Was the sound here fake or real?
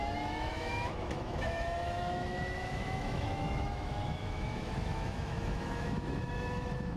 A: fake